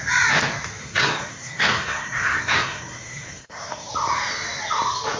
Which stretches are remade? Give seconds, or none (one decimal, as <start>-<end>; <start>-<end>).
0.8-3.9